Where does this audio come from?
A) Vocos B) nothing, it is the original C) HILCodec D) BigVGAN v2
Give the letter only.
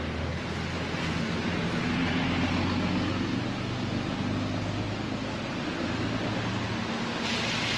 B